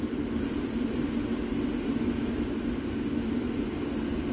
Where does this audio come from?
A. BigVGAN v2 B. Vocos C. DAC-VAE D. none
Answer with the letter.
D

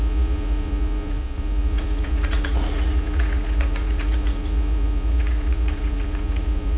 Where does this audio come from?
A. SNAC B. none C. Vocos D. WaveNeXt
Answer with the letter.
C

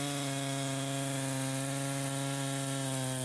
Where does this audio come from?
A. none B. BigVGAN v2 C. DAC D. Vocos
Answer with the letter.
A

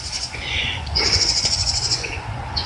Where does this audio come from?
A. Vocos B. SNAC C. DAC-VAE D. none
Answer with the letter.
A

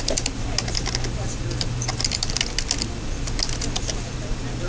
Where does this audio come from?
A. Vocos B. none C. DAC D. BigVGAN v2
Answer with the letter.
B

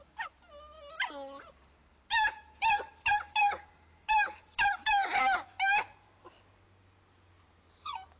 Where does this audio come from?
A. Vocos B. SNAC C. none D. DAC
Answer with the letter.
C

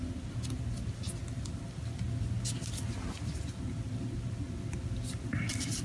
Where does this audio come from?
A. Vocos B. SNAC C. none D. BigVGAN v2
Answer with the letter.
C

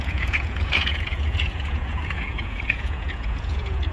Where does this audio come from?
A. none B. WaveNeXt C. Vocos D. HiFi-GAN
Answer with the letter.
C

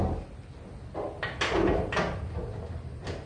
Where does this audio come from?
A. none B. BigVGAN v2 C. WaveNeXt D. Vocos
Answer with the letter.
A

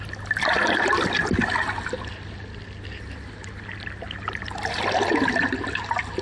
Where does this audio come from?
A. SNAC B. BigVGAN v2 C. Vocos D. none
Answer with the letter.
D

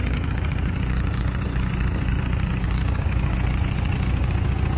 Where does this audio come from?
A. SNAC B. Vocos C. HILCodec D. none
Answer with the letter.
B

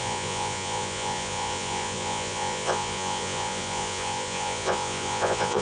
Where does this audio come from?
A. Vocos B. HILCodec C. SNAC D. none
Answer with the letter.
A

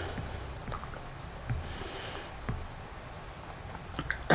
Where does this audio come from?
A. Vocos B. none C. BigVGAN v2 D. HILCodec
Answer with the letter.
B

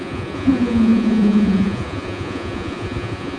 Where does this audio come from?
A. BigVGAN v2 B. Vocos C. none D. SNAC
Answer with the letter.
B